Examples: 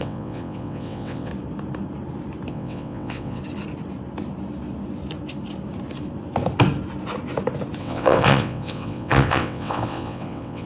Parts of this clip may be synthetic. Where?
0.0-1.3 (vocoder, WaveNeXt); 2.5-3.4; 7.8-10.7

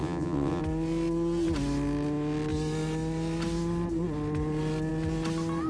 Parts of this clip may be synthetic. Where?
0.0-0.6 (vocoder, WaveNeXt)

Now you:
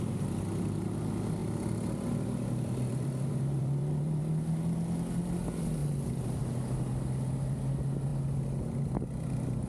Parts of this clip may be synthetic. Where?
1.4-4.2 (vocoder, BigVGAN v2); 5.8-6.4

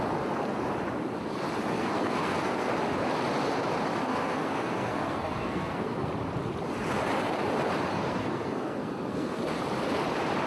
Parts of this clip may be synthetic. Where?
1.7-2.7 (codec, SNAC); 4.0-6.1; 7.9-9.4

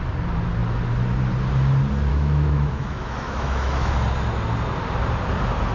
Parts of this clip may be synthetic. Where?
2.1-3.9 (autoencoder, DAC-VAE)